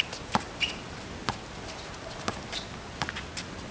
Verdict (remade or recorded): recorded